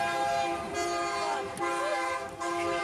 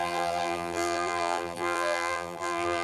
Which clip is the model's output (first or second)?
second